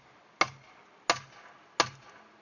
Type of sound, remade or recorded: recorded